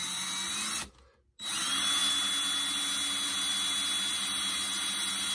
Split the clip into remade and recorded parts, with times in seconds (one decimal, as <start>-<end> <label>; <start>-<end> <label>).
0.0-5.3 recorded